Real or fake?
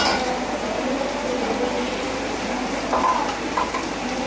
real